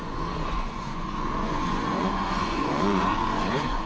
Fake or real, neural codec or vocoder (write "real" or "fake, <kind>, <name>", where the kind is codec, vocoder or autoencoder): fake, vocoder, Vocos